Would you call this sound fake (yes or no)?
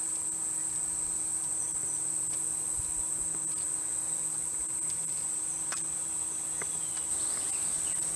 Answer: no